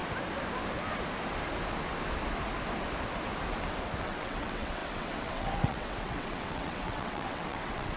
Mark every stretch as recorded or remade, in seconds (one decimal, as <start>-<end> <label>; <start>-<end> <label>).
0.0-4.0 recorded; 4.0-8.0 remade